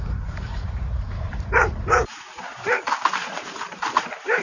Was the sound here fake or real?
fake